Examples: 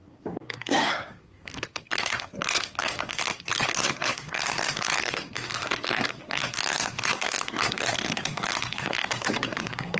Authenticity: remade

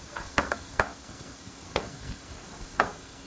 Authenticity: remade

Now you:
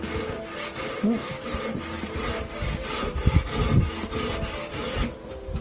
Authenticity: recorded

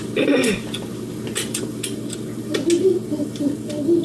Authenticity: recorded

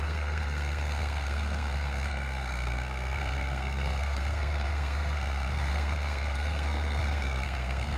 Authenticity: remade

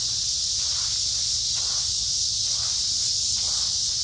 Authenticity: recorded